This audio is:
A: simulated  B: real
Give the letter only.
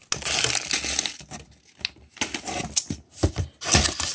B